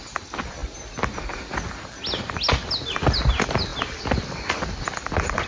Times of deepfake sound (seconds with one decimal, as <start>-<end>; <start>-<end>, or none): none